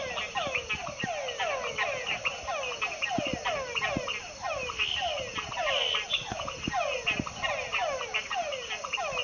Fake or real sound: real